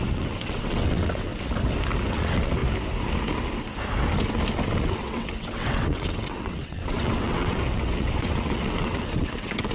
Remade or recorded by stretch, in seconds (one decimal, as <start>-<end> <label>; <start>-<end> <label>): 0.0-1.3 remade; 1.3-2.1 recorded; 2.1-2.6 remade; 2.6-4.7 recorded; 4.7-9.7 remade